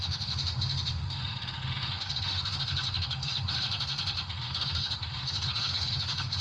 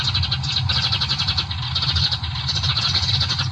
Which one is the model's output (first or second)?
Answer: first